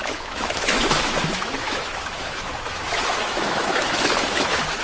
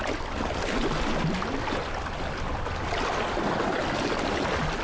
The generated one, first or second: first